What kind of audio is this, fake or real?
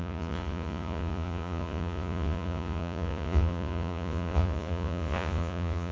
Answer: fake